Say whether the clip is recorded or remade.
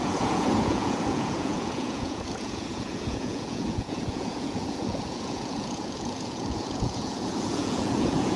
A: remade